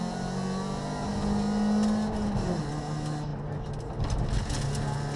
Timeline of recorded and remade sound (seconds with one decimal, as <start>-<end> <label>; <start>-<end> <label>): 0.0-5.2 recorded